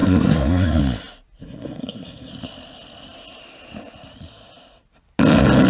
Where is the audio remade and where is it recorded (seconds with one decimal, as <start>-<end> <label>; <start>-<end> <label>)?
0.0-0.8 remade; 0.8-1.4 recorded; 1.4-2.3 remade; 2.3-5.7 recorded